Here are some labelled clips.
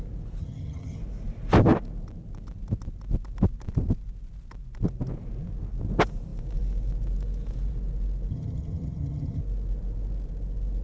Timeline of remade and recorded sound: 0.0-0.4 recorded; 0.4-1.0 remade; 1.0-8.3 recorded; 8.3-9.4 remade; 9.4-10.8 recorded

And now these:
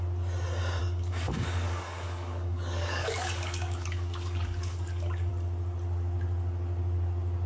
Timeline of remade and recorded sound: 0.0-0.8 recorded; 0.8-5.3 remade; 5.3-7.5 recorded